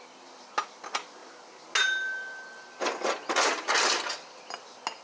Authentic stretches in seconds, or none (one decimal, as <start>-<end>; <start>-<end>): 0.0-5.0